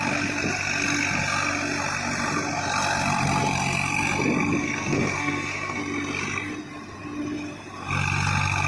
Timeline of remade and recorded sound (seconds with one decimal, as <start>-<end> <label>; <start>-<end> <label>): 0.0-4.6 recorded; 4.6-5.8 remade; 5.8-8.7 recorded